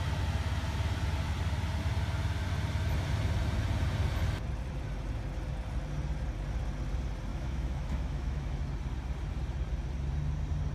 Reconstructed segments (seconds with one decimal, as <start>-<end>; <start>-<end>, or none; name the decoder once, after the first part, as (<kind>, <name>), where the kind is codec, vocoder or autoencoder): 7.3-8.6 (autoencoder, DAC-VAE)